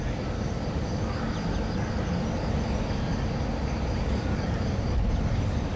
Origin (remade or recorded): recorded